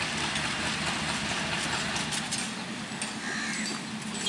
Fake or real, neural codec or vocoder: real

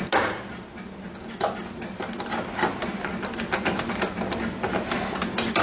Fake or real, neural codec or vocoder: real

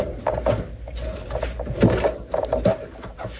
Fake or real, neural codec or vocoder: real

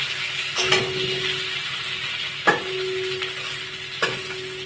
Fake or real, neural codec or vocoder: real